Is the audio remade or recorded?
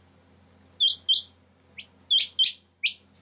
recorded